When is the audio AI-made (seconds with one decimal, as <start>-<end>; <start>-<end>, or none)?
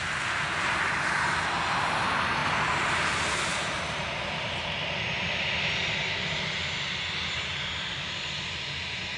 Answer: none